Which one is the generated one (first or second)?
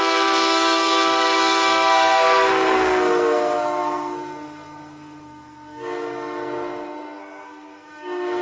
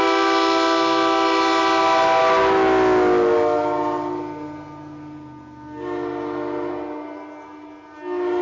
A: first